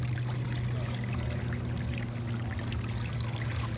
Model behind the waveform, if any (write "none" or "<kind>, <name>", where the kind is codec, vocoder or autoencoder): none